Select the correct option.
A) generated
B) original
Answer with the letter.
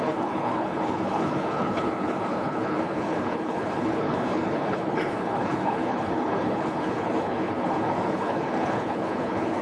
A